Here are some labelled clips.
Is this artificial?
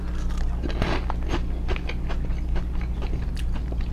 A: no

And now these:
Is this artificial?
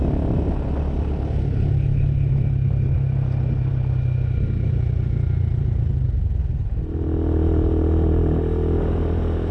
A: no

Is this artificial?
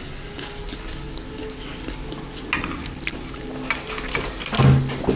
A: no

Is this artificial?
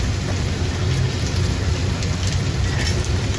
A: yes